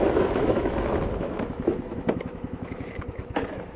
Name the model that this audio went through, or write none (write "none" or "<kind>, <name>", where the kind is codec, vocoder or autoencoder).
autoencoder, DAC-VAE